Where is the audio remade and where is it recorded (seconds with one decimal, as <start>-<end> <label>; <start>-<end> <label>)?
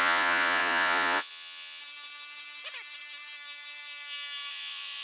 0.0-1.8 remade; 1.8-4.5 recorded; 4.5-5.0 remade